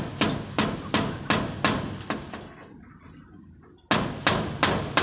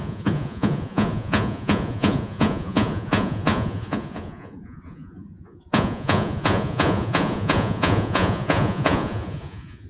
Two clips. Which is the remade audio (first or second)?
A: second